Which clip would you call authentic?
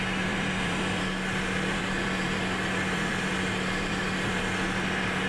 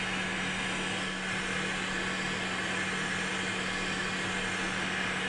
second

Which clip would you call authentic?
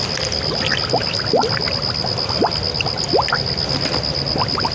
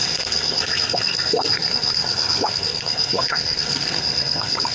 first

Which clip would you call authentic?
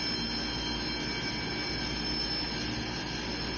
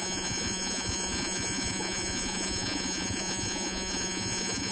first